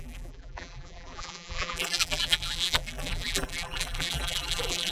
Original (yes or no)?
no